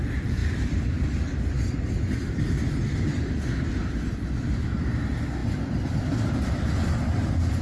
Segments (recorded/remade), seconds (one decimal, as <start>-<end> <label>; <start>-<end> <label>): 0.0-7.6 recorded